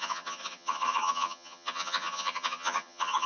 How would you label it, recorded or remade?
remade